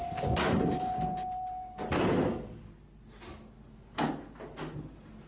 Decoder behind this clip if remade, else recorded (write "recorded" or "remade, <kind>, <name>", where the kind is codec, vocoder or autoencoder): recorded